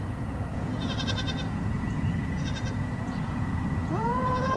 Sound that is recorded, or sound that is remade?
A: remade